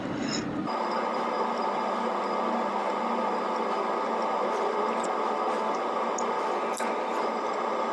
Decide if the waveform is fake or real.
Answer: real